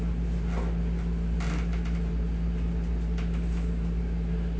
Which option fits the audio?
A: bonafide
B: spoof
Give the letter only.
A